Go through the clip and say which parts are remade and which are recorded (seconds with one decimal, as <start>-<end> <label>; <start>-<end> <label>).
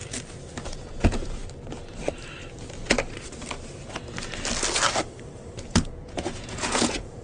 0.0-0.7 recorded; 0.7-1.4 remade; 1.4-5.7 recorded; 5.7-7.2 remade